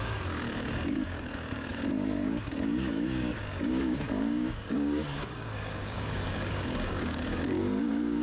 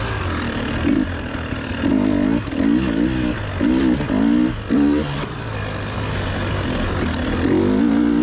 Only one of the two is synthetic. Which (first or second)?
first